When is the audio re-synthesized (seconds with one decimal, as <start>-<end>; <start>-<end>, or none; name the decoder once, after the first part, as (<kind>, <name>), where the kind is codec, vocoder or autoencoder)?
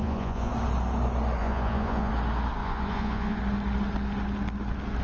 0.0-0.5 (vocoder, Vocos); 1.4-2.1; 2.6-3.4